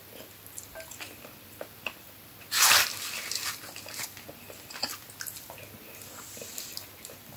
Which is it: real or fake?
real